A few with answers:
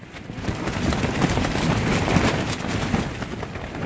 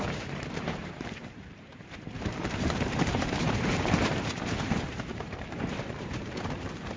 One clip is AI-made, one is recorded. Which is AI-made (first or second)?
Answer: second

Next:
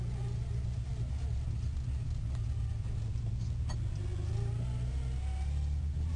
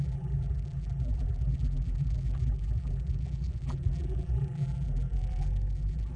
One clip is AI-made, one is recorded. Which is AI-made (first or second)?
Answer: second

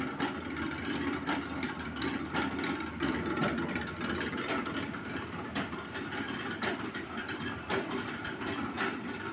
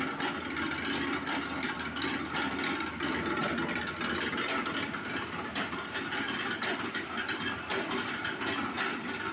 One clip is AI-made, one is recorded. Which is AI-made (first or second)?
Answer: first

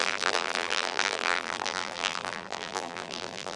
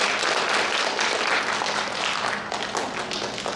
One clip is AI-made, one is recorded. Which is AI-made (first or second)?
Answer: first